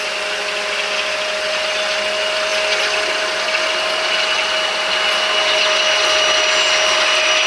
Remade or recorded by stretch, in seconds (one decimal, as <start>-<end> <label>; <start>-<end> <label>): 0.0-7.5 recorded